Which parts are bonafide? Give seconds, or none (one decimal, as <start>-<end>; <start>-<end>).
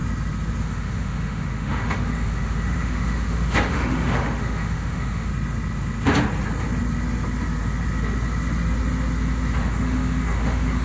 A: 0.0-0.6; 5.3-9.6